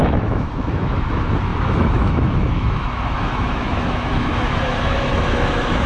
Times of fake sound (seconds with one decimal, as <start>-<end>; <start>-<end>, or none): 0.0-5.9